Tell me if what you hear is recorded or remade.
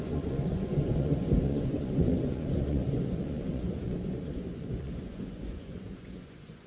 remade